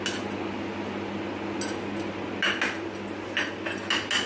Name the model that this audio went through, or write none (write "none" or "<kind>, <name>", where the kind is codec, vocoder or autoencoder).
none